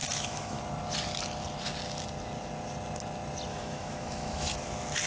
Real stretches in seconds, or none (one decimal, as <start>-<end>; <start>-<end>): 0.6-3.5; 4.5-5.1